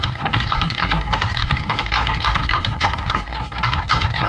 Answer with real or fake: fake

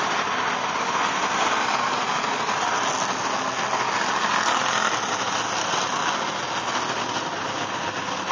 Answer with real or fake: real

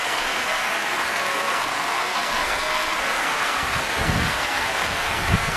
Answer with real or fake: fake